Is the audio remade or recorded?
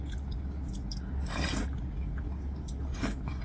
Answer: recorded